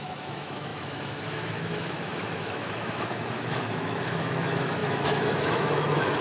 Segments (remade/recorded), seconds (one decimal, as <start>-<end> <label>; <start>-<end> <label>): 0.0-6.2 remade